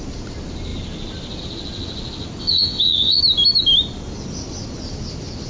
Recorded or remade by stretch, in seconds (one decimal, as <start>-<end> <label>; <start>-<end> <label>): 0.0-2.4 recorded; 2.4-3.2 remade; 3.2-5.5 recorded